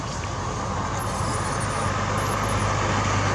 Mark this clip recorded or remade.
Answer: recorded